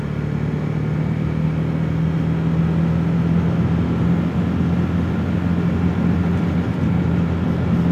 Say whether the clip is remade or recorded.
recorded